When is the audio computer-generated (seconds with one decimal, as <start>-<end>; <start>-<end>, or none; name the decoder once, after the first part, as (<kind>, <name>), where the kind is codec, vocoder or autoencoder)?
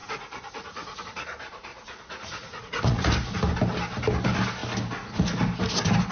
0.0-1.0 (vocoder, Vocos); 1.7-3.1